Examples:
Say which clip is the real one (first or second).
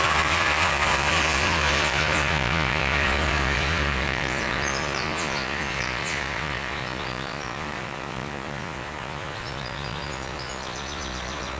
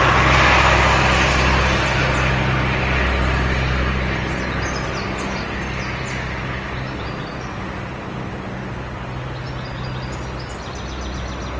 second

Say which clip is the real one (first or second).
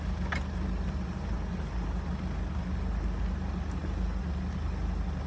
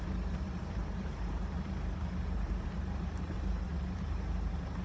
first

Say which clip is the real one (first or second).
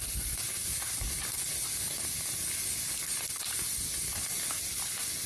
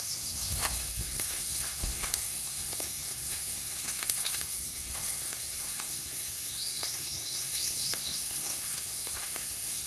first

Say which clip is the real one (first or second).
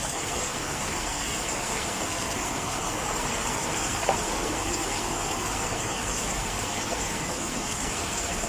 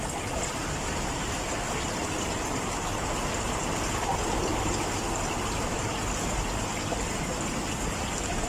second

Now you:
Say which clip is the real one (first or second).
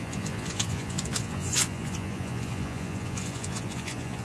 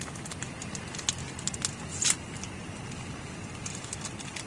second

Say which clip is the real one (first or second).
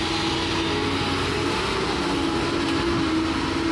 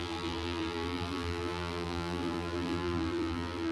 first